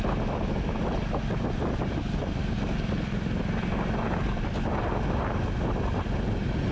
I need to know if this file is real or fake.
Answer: real